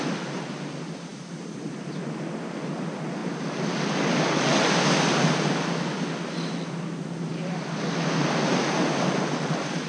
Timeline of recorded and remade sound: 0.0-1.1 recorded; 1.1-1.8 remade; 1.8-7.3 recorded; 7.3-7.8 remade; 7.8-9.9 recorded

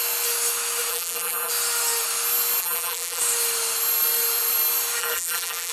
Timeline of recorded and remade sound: 0.0-0.9 recorded; 0.9-1.5 remade; 1.5-2.6 recorded; 2.6-3.2 remade; 3.2-5.0 recorded; 5.0-5.7 remade

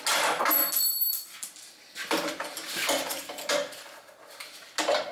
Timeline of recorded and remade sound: 0.0-1.1 recorded; 1.1-3.4 remade; 3.4-5.1 recorded

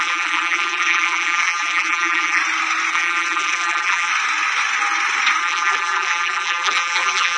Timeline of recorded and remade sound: 0.0-2.4 remade; 2.4-2.9 recorded; 2.9-4.1 remade; 4.1-5.4 recorded; 5.4-7.4 remade

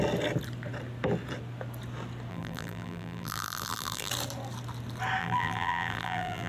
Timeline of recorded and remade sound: 0.0-2.3 recorded; 2.3-4.1 remade; 4.1-5.2 recorded; 5.2-6.5 remade

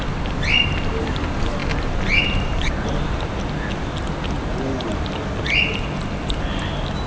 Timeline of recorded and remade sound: 0.0-7.1 recorded